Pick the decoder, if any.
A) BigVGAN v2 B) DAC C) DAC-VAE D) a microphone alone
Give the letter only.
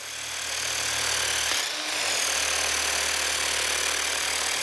D